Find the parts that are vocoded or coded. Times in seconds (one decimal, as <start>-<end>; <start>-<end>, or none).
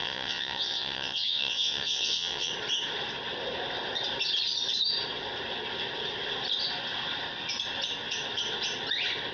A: 0.0-2.5